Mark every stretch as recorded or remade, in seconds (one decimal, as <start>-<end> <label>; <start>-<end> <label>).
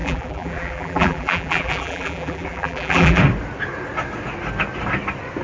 0.0-3.2 remade; 3.2-5.4 recorded